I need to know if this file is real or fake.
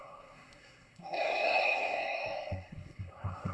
fake